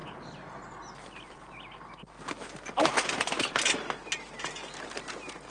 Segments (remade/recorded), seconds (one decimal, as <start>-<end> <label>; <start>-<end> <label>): 0.0-5.5 recorded